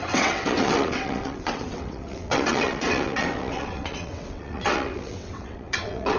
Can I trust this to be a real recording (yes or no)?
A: no